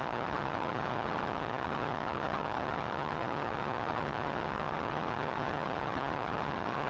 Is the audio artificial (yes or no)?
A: yes